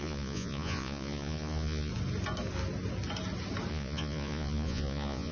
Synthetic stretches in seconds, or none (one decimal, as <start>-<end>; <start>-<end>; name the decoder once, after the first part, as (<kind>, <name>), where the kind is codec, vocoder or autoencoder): 0.0-1.9 (vocoder, Vocos); 3.7-5.3